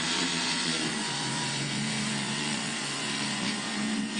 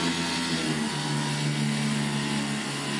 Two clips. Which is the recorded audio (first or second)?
second